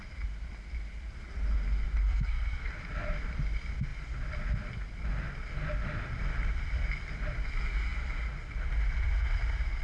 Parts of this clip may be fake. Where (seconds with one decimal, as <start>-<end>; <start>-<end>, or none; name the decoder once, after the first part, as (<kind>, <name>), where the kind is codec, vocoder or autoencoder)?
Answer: 2.0-2.7 (codec, SNAC)

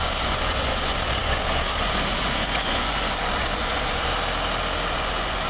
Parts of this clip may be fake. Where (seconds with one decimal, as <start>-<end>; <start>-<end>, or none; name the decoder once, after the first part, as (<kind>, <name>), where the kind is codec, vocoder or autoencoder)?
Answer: 0.0-4.1 (vocoder, Vocos); 4.9-5.5

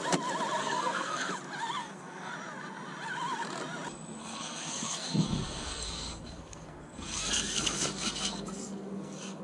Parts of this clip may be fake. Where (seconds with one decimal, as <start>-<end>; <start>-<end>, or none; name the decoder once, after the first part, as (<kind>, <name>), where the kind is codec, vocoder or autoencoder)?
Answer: 0.6-1.3 (codec, SNAC); 1.8-2.3; 4.2-9.4

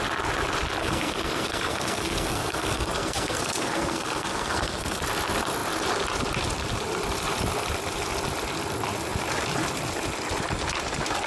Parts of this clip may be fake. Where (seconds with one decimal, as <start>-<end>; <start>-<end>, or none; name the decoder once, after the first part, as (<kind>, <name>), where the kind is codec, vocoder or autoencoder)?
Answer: 0.8-5.0 (codec, SNAC)

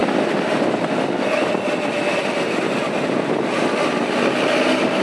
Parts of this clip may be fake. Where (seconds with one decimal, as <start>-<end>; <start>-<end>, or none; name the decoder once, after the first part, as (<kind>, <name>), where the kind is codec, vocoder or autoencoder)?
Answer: none

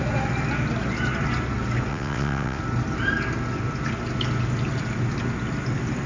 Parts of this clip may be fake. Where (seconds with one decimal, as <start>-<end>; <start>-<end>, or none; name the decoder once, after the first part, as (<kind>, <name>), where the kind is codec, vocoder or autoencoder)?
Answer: 1.9-2.6 (vocoder, WaveNeXt)

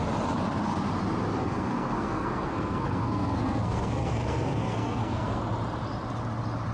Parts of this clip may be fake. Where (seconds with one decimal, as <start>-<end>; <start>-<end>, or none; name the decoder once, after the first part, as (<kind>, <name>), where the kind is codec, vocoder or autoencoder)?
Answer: 1.4-5.4 (codec, SNAC)

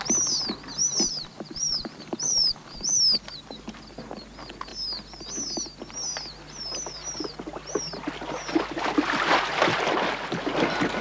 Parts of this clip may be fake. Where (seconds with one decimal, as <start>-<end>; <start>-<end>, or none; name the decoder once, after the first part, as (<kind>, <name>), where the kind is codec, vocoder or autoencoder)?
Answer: 0.8-3.0 (vocoder, BigVGAN v2)